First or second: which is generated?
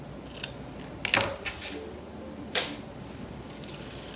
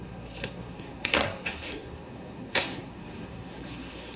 second